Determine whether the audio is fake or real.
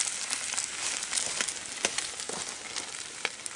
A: real